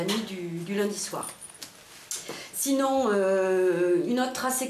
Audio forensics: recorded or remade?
recorded